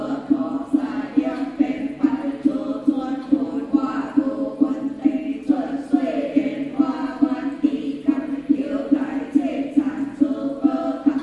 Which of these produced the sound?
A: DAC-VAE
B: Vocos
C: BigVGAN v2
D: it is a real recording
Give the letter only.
D